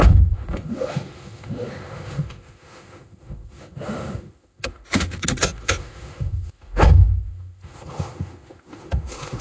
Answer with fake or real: fake